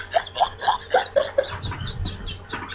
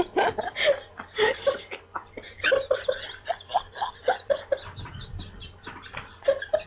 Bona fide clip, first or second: first